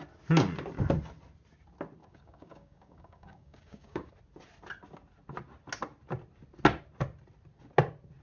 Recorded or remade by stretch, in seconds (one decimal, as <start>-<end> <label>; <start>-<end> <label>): 0.0-2.0 recorded; 2.0-4.1 remade; 4.1-8.2 recorded